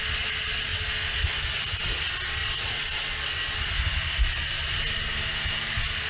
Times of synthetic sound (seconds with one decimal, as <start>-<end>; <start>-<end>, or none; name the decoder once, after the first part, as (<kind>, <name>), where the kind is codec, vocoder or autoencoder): none